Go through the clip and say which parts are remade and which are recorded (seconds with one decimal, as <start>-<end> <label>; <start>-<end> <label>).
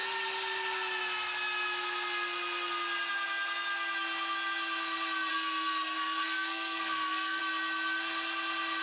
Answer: 0.0-5.3 recorded; 5.3-7.4 remade; 7.4-8.8 recorded